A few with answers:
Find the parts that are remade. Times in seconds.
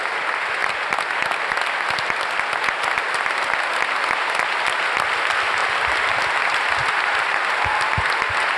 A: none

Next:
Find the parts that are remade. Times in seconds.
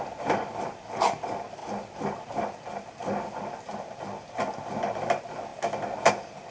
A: none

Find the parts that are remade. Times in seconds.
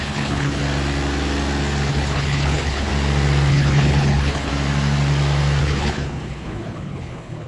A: 0.0-0.6 (codec, HILCodec); 1.9-2.9; 3.5-4.5; 5.6-7.5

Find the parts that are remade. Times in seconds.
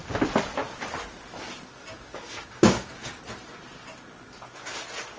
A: 1.9-3.2 (codec, DAC)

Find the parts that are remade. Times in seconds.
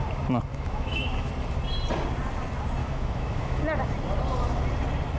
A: 0.5-1.3 (autoencoder, DAC-VAE); 2.8-3.6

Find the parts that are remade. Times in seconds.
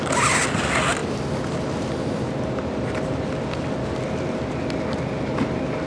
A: none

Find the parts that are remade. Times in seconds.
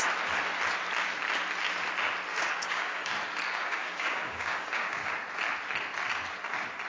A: 2.3-3.1 (codec, DAC); 3.6-5.1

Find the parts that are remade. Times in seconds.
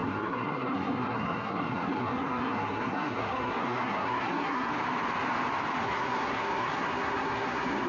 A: 0.0-4.7 (codec, SNAC); 5.8-7.9